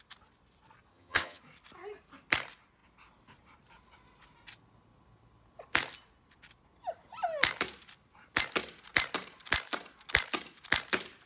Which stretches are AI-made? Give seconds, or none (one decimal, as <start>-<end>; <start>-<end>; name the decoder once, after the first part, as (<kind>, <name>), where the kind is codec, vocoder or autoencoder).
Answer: 0.9-1.4 (vocoder, HiFi-GAN)